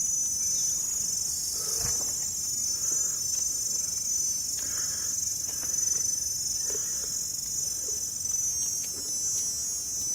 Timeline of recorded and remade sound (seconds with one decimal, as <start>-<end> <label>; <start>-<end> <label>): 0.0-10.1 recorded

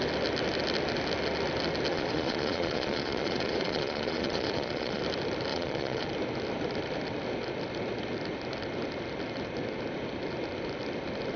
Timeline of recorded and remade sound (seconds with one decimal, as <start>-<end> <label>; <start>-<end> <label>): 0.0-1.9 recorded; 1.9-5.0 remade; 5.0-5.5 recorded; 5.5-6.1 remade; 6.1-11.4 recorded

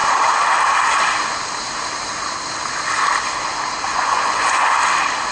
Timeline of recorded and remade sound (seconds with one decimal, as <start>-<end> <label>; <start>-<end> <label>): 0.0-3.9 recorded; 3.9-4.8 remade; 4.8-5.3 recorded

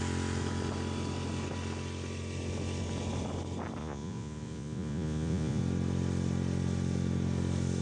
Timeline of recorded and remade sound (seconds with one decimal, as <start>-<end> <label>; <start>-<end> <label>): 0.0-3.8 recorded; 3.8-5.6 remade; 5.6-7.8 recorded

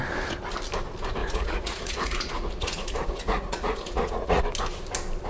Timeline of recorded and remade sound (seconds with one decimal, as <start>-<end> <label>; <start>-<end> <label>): 0.0-1.2 recorded; 1.2-4.4 remade; 4.4-5.3 recorded

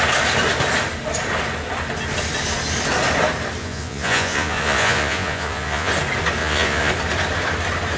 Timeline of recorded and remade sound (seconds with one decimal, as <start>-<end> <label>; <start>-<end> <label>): 0.0-3.6 recorded; 3.6-5.9 remade; 5.9-6.4 recorded; 6.4-6.9 remade; 6.9-8.0 recorded

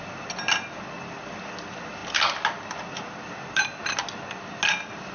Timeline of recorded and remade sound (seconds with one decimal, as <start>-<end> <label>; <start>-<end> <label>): 0.0-5.1 recorded